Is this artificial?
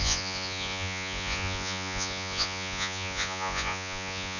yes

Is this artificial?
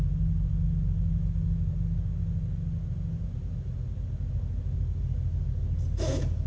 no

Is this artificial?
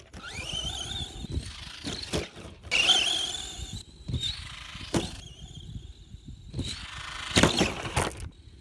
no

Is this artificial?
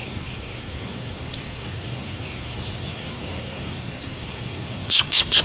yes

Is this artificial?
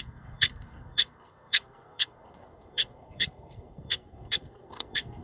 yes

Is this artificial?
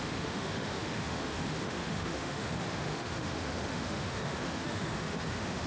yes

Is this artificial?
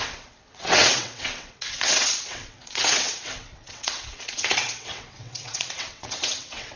yes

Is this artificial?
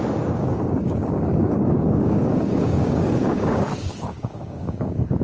yes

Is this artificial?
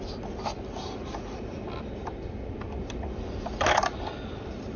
no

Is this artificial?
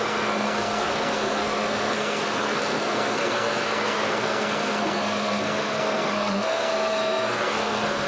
yes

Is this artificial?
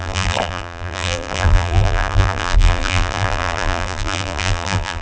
yes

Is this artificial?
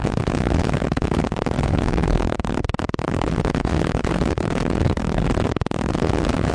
yes